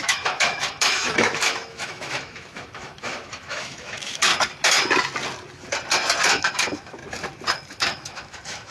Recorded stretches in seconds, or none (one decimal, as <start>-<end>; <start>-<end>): 4.3-6.3; 7.0-7.7